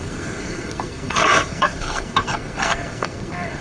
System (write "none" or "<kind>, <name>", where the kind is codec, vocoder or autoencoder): codec, SNAC